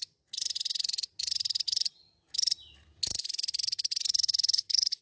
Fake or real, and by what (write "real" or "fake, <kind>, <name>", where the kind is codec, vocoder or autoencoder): real